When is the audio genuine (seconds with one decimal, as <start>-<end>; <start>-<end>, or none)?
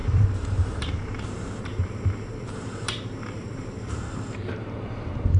none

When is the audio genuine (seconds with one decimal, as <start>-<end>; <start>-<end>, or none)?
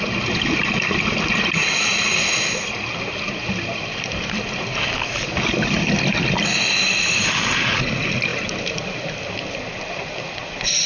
0.0-10.9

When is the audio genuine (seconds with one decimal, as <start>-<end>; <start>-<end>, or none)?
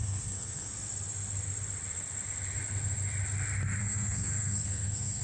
0.7-3.8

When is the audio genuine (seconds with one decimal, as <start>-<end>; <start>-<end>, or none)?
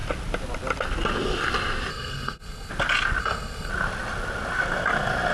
0.0-1.9; 2.7-3.2; 3.7-5.3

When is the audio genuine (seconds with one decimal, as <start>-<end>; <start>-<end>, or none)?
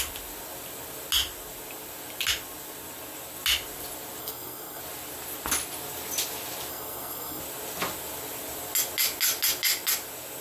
0.0-4.2; 4.8-6.7; 7.4-10.4